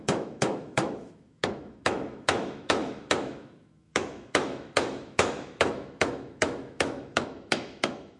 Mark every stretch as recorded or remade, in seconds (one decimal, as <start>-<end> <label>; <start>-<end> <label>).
0.0-8.2 remade